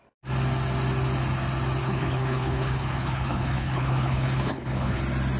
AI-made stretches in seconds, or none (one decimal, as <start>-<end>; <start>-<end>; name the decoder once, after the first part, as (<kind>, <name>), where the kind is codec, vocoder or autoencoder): 1.8-5.0 (codec, HILCodec)